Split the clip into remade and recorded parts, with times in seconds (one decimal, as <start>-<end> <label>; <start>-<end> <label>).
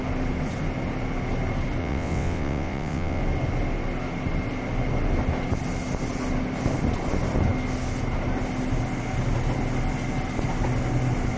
0.0-1.8 recorded; 1.8-3.2 remade; 3.2-11.4 recorded